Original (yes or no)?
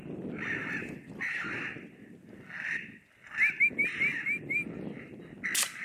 yes